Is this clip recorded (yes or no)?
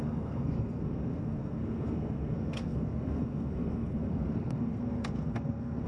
no